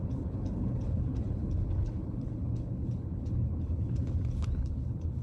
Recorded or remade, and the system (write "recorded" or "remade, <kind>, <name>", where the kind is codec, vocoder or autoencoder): remade, codec, HILCodec